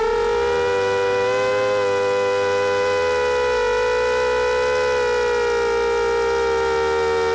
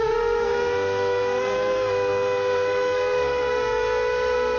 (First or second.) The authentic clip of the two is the first